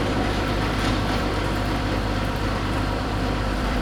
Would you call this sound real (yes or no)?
no